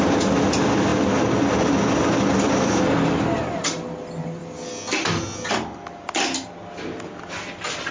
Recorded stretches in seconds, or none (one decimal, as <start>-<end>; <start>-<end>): 0.0-7.9